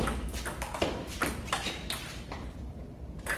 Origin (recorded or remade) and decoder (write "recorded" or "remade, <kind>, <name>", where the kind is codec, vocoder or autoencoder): recorded